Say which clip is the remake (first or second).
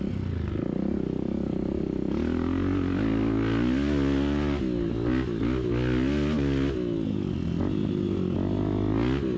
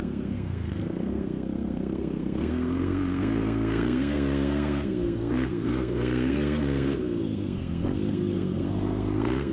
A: second